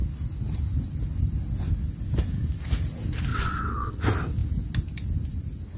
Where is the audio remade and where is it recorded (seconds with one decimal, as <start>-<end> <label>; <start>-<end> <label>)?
0.0-3.3 recorded; 3.3-4.0 remade; 4.0-5.8 recorded